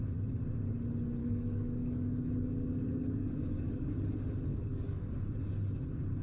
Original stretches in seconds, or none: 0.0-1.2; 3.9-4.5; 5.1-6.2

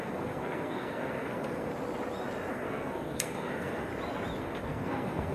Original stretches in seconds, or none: 1.7-2.5; 3.9-4.4

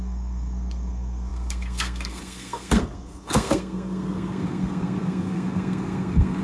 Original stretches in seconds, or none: none

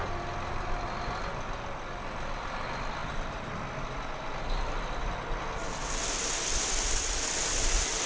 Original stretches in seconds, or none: 0.0-8.1

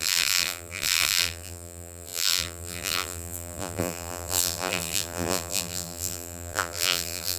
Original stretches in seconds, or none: none